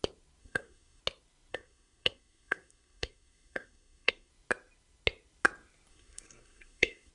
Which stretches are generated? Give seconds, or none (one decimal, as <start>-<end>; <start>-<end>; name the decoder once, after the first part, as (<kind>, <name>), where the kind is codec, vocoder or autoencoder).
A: 0.4-1.0 (codec, SNAC); 1.5-4.3; 5.9-7.1